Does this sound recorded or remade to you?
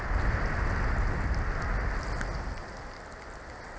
recorded